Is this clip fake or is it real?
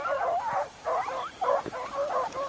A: real